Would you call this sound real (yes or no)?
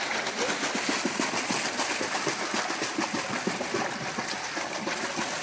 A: yes